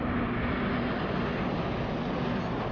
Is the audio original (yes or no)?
yes